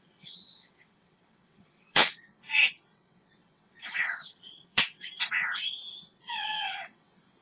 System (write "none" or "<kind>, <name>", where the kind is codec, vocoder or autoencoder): vocoder, WaveNeXt